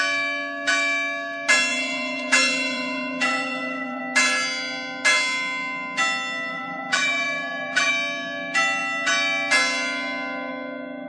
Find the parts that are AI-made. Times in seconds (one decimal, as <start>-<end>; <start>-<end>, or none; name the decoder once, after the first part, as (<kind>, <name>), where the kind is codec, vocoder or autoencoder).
1.7-4.0 (vocoder, BigVGAN v2); 6.5-7.9